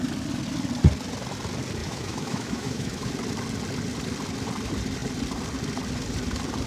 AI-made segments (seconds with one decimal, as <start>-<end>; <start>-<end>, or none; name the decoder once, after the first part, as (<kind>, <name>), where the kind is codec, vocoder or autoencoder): 1.8-3.1 (autoencoder, DAC-VAE)